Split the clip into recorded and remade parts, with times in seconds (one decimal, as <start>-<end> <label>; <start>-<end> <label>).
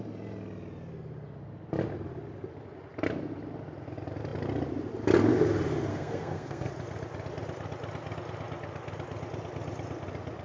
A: 0.0-5.9 recorded; 5.9-6.7 remade; 6.7-10.4 recorded